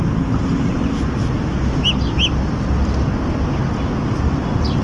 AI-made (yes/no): no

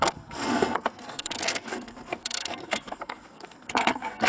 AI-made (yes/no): yes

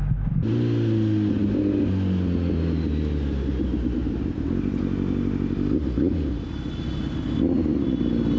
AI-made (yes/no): no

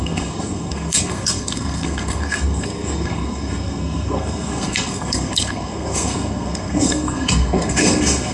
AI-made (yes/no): yes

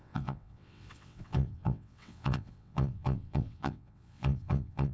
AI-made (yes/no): yes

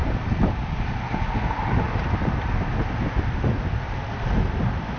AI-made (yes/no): no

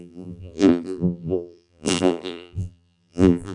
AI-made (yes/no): yes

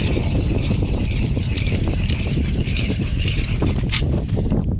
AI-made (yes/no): yes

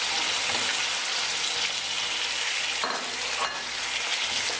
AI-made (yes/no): no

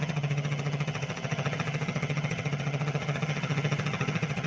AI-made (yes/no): yes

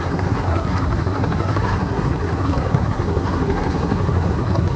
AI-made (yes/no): yes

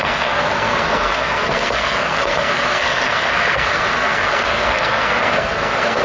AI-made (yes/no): yes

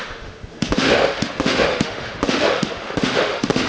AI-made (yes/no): yes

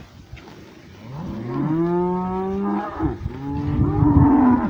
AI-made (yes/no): no